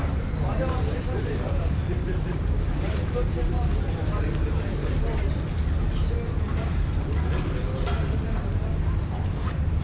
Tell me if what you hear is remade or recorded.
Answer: remade